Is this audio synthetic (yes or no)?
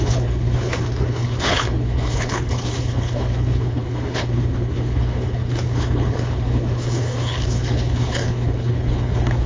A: yes